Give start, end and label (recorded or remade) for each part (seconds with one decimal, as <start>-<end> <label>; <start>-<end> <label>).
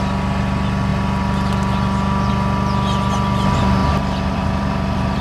0.0-0.9 recorded; 0.9-2.3 remade; 2.3-3.8 recorded; 3.8-5.2 remade